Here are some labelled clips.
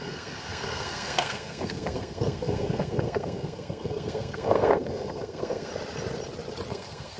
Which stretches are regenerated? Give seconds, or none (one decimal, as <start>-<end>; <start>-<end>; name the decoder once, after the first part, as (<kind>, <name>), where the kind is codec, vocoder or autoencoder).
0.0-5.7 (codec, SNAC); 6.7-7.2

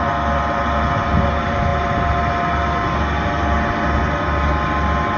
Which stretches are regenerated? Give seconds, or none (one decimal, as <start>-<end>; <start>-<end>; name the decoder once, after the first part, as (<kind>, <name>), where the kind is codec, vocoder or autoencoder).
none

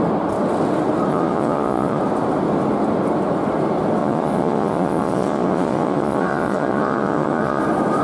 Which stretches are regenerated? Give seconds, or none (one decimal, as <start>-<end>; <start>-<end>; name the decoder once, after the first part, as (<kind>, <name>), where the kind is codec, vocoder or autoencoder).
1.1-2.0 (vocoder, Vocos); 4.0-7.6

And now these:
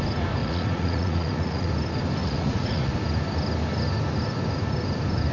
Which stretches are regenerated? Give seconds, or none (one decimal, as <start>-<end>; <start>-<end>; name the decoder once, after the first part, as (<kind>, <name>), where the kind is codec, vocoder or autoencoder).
0.4-1.7 (vocoder, Vocos); 2.2-2.9

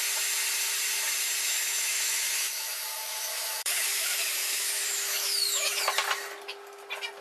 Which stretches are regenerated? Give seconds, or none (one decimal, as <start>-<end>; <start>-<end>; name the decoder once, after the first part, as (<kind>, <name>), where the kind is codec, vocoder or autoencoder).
1.5-5.8 (autoencoder, DAC-VAE)

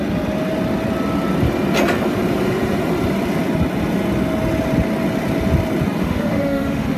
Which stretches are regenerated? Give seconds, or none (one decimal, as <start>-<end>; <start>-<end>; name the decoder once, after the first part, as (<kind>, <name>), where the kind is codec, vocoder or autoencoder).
6.0-7.0 (autoencoder, DAC-VAE)

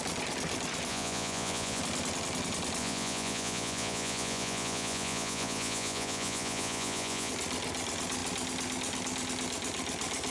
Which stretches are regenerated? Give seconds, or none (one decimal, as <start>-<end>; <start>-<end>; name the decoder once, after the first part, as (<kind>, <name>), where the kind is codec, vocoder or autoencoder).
0.9-1.8 (vocoder, Vocos); 2.8-7.3

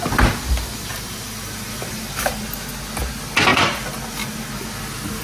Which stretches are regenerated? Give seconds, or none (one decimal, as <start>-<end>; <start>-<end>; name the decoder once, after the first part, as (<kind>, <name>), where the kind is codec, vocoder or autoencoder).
0.9-2.5 (vocoder, BigVGAN v2); 3.5-4.5